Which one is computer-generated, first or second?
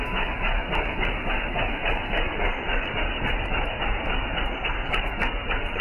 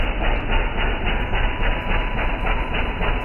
first